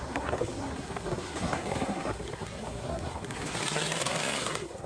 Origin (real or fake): fake